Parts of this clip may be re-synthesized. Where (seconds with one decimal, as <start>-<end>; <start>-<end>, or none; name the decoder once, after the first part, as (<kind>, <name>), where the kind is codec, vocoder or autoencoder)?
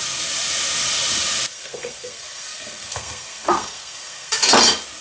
1.5-4.5 (codec, SNAC)